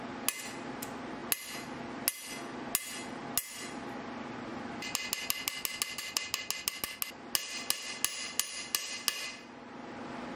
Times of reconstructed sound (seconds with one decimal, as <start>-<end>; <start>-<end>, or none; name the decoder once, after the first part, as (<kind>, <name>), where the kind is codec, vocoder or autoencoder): none